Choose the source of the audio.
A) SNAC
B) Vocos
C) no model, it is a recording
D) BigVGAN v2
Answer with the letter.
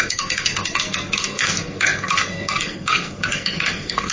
A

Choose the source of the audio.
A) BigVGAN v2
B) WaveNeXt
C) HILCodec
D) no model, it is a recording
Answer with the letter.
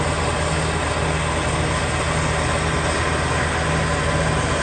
D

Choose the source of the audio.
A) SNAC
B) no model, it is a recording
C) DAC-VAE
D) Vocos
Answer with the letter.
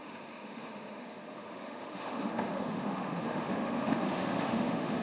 C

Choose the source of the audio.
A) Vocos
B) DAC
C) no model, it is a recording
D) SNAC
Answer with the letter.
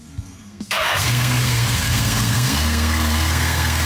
D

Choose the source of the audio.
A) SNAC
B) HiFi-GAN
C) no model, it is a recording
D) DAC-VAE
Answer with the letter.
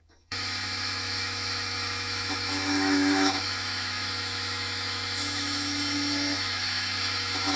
D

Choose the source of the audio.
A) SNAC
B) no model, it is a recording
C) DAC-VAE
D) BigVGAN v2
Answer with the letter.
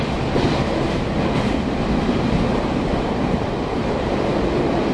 D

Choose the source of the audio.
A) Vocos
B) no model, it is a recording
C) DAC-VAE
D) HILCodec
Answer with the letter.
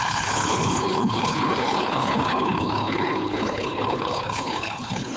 D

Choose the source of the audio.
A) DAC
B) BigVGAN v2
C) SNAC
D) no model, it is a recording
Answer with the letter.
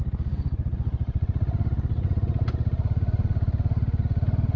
D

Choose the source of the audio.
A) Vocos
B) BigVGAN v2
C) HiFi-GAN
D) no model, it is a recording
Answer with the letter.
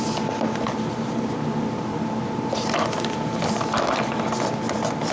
D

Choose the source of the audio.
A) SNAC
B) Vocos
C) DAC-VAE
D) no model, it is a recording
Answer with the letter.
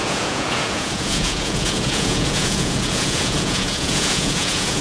B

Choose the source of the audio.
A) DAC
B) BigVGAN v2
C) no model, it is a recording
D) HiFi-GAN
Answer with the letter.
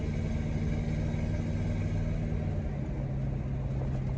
C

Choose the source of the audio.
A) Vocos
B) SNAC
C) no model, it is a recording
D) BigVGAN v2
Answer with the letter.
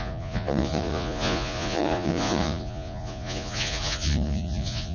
A